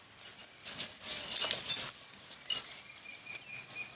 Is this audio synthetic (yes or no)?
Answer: no